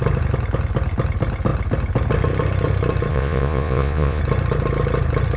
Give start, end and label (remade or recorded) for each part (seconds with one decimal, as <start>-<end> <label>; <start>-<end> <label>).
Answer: 0.0-3.1 recorded; 3.1-4.2 remade; 4.2-5.4 recorded